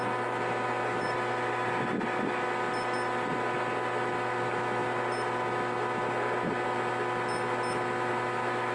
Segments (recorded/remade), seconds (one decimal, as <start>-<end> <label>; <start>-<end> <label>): 0.0-8.7 recorded